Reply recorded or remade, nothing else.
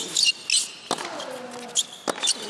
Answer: recorded